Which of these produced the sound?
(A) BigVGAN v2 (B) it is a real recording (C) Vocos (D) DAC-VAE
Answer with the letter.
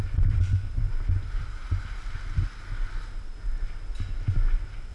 B